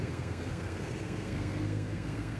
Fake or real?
fake